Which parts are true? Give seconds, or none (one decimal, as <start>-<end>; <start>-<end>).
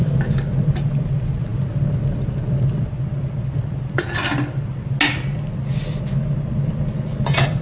0.0-7.6